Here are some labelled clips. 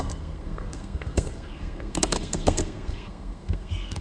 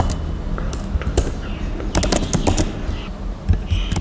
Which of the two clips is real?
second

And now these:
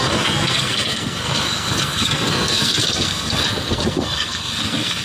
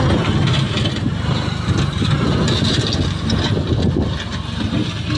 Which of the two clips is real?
second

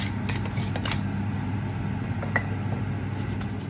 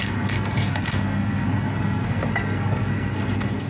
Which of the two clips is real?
first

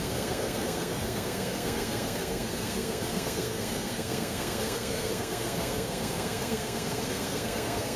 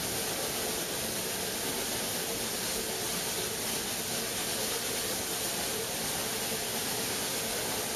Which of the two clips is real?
second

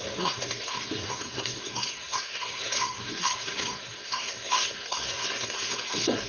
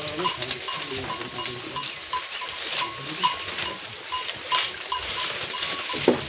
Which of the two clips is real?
second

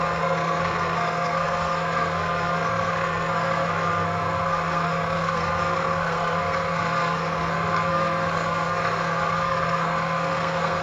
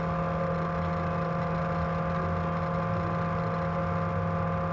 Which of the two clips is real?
second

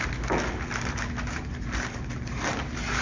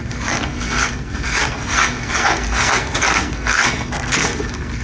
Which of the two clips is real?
first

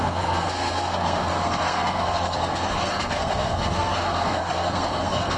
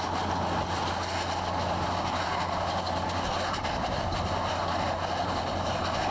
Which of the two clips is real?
second